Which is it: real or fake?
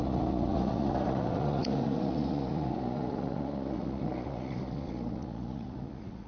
fake